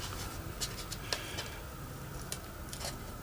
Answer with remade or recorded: recorded